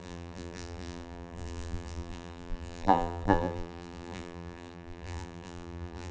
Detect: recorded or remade remade